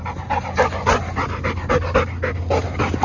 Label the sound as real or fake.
real